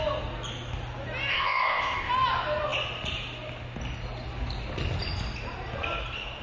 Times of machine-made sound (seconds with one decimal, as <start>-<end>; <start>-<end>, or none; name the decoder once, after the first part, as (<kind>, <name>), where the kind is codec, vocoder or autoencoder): 1.3-2.1 (codec, ZipCodec)